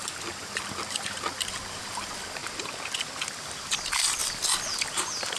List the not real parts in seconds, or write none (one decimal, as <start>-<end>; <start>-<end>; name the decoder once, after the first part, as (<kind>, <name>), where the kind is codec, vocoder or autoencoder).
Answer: 0.0-2.4 (vocoder, BigVGAN v2); 3.2-5.4